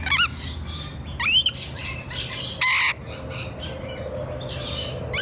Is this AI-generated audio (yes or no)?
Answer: no